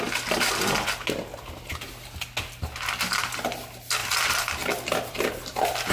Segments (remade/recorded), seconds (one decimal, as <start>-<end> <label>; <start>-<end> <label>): 0.0-1.3 recorded; 1.3-1.8 remade; 1.8-4.0 recorded; 4.0-5.9 remade